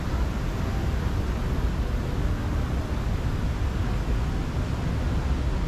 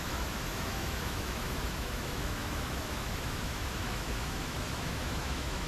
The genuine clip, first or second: first